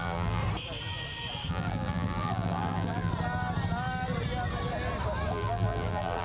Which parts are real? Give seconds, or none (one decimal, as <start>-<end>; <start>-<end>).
0.4-1.5; 3.1-5.3